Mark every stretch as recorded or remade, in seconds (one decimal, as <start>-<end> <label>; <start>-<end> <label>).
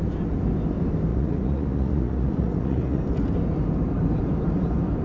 0.0-1.1 recorded; 1.1-3.0 remade; 3.0-5.0 recorded